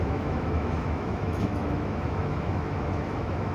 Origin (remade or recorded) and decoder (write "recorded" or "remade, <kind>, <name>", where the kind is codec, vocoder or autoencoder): remade, autoencoder, DAC-VAE